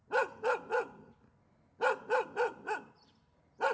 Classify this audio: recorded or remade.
recorded